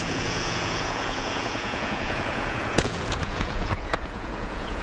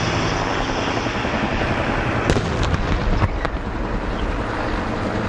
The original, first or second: second